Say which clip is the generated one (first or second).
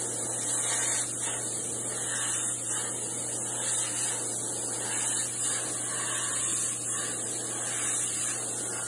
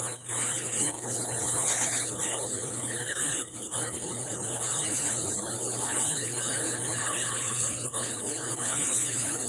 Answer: second